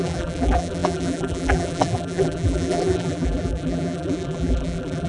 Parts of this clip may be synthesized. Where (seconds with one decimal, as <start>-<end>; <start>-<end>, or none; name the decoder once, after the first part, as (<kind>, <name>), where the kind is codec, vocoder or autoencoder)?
0.0-5.1 (vocoder, BigVGAN v2)